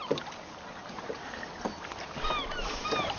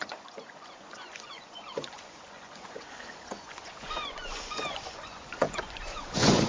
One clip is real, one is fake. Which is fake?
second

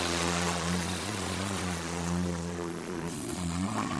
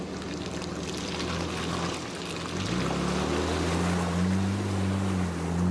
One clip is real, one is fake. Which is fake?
first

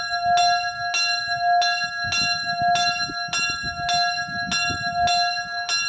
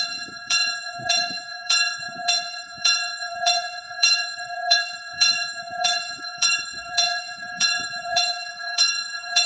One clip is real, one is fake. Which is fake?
second